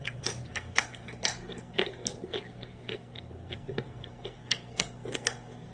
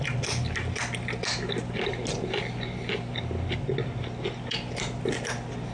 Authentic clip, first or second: second